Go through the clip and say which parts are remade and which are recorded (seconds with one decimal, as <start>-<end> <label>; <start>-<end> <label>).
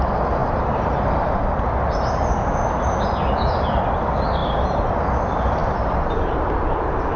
0.0-0.4 recorded; 0.4-1.3 remade; 1.3-4.4 recorded; 4.4-4.9 remade; 4.9-7.2 recorded